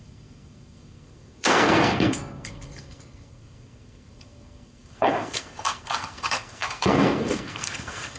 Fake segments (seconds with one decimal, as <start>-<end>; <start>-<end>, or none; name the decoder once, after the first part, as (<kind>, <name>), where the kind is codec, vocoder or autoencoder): 0.0-8.2 (codec, SNAC)